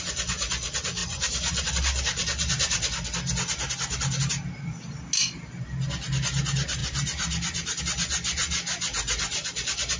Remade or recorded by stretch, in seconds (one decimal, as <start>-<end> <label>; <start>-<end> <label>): 0.0-1.0 recorded; 1.0-1.7 remade; 1.7-6.8 recorded; 6.8-7.8 remade; 7.8-10.0 recorded